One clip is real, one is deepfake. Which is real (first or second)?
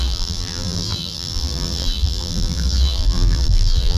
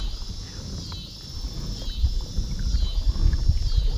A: second